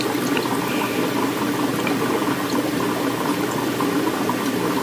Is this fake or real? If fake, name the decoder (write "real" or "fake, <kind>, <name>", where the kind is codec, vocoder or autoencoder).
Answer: real